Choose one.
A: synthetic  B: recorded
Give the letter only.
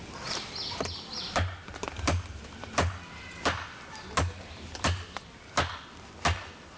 B